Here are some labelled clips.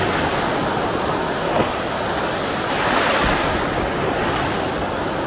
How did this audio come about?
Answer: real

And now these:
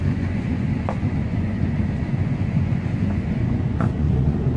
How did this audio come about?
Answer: fake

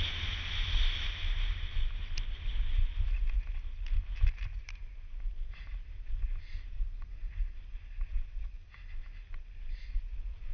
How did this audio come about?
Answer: real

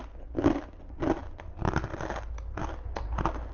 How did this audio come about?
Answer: real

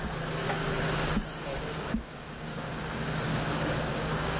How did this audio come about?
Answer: fake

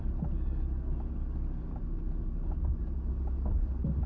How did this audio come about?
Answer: real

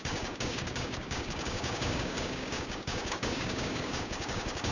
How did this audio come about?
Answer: fake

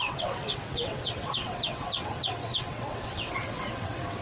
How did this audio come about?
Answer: fake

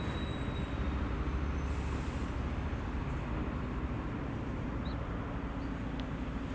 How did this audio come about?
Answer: real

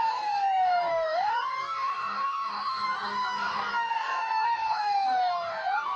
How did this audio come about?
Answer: fake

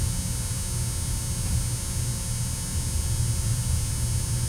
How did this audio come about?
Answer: real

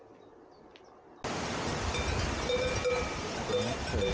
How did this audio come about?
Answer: real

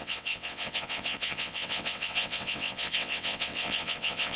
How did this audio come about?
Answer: fake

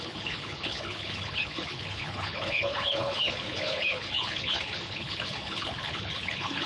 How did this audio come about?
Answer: fake